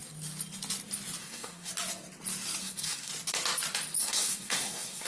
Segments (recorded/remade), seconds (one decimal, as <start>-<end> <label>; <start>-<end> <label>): 0.0-1.2 recorded; 1.2-1.7 remade; 1.7-2.6 recorded; 2.6-3.1 remade; 3.1-4.0 recorded; 4.0-5.1 remade